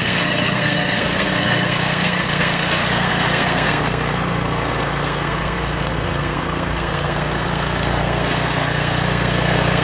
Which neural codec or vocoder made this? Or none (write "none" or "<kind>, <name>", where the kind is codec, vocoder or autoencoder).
codec, SNAC